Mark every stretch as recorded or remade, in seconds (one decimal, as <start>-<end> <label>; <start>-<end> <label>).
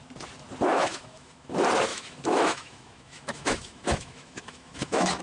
0.0-0.7 recorded; 0.7-1.5 remade; 1.5-1.9 recorded; 1.9-5.2 remade